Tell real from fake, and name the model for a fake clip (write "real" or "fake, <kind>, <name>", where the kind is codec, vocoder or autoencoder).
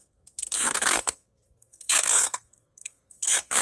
fake, codec, SNAC